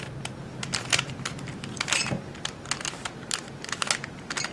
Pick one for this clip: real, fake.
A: real